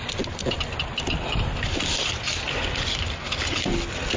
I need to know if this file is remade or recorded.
recorded